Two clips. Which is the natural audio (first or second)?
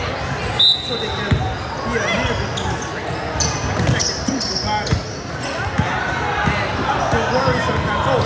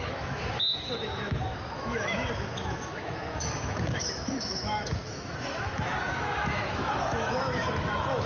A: first